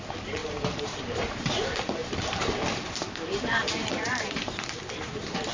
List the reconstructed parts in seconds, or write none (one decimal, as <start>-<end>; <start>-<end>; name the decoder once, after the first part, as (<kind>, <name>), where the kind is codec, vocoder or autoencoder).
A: 0.4-1.6 (vocoder, BigVGAN v2); 2.0-4.8